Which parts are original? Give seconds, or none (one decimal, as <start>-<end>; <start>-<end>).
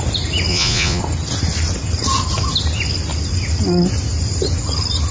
0.0-0.5; 1.0-5.1